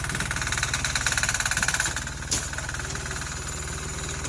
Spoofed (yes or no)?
no